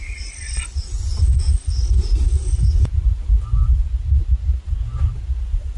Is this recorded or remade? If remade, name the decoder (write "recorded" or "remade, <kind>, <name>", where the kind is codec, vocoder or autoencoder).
recorded